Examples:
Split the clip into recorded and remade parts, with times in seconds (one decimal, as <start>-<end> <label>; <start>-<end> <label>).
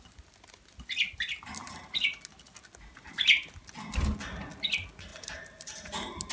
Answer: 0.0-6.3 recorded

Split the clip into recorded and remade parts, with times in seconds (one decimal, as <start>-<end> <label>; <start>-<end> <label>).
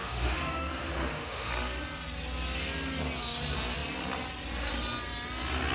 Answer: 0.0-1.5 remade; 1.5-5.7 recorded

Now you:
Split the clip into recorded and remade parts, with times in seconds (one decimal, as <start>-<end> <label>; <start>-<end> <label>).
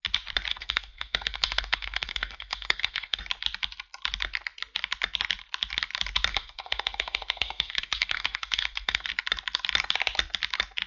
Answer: 0.0-0.5 recorded; 0.5-3.2 remade; 3.2-6.3 recorded; 6.3-9.1 remade; 9.1-10.9 recorded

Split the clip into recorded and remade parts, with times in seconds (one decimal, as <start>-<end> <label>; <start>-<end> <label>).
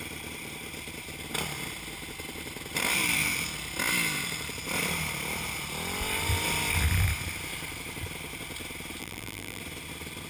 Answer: 0.0-9.0 recorded; 9.0-9.6 remade; 9.6-10.3 recorded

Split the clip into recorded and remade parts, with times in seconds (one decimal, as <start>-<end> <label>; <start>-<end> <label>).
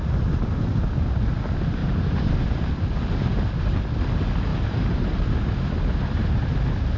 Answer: 0.0-1.8 recorded; 1.8-2.7 remade; 2.7-4.5 recorded; 4.5-6.5 remade; 6.5-7.0 recorded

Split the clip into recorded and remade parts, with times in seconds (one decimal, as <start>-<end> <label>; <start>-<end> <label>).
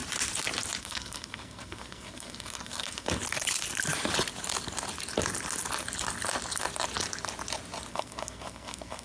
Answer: 0.0-0.8 recorded; 0.8-3.2 remade; 3.2-7.9 recorded; 7.9-9.0 remade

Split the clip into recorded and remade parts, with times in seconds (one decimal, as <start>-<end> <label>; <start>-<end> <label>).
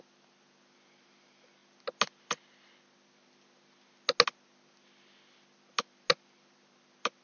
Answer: 0.0-7.2 recorded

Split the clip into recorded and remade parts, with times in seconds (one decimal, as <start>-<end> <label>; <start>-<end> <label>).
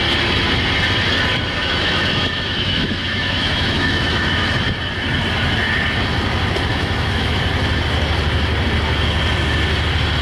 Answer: 0.0-1.6 recorded; 1.6-4.5 remade; 4.5-6.7 recorded; 6.7-7.4 remade; 7.4-10.2 recorded